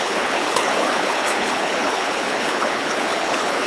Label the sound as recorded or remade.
remade